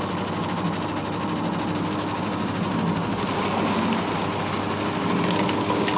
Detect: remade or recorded recorded